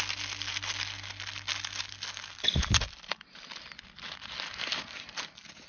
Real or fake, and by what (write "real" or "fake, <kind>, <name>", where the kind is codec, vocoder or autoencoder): real